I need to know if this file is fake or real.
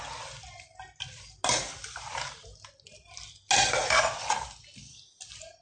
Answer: real